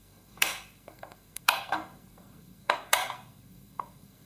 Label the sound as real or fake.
fake